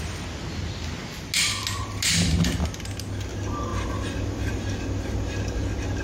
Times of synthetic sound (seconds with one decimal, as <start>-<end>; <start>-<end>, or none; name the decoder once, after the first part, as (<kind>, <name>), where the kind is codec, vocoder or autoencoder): none